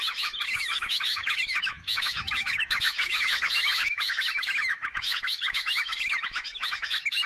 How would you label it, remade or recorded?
remade